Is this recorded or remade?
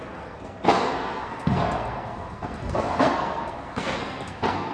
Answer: remade